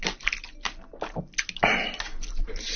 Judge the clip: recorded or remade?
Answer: recorded